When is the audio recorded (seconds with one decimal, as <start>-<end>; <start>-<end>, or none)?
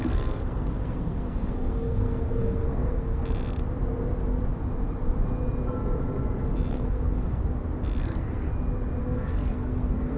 3.2-6.7; 7.4-8.0; 8.5-9.0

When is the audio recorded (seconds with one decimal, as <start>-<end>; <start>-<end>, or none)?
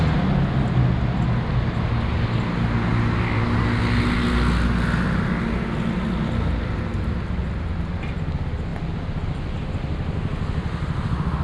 0.0-11.4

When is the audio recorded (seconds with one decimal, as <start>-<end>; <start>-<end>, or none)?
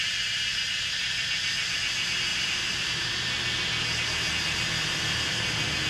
0.0-2.3; 3.1-5.9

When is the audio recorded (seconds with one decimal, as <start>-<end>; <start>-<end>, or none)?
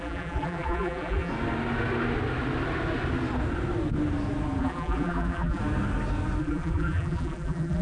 1.3-4.6; 5.6-6.4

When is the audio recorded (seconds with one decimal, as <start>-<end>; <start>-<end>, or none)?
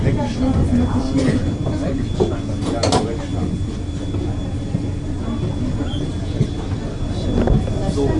0.0-8.2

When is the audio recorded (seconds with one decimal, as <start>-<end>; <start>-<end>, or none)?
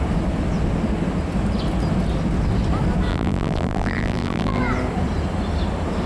0.0-3.1; 4.6-6.1